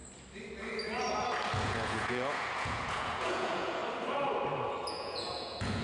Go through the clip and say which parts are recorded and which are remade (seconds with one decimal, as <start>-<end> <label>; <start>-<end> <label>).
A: 0.0-1.6 recorded; 1.6-3.8 remade; 3.8-4.9 recorded; 4.9-5.8 remade

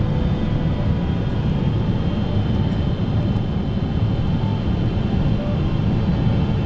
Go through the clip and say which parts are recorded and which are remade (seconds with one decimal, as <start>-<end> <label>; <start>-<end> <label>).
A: 0.0-6.7 recorded

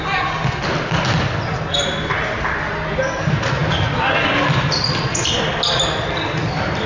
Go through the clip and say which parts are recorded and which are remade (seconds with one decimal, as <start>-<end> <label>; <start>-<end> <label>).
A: 0.0-6.9 recorded